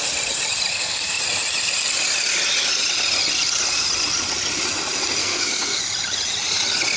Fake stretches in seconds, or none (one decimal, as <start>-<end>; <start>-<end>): 0.7-1.2; 5.2-5.8